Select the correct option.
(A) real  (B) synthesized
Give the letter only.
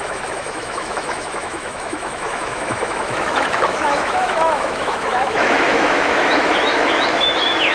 B